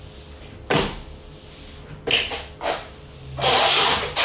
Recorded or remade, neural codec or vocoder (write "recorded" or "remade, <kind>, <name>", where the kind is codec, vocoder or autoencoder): recorded